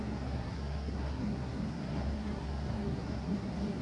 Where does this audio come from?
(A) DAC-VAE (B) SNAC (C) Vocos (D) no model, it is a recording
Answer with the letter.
B